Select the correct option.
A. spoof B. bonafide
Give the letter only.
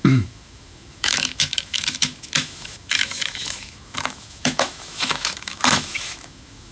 A